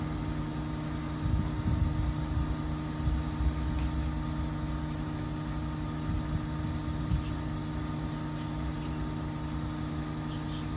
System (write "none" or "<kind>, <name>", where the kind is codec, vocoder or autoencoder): none